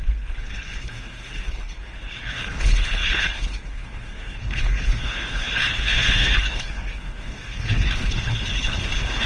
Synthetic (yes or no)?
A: yes